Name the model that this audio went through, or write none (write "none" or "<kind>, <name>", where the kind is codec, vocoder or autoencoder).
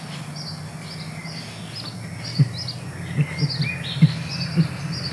none